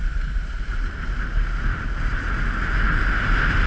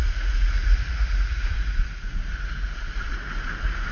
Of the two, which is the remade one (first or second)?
second